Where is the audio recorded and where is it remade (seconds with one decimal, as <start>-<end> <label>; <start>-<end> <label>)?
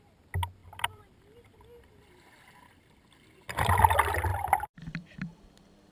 0.0-0.6 recorded; 0.6-1.6 remade; 1.6-4.3 recorded; 4.3-5.9 remade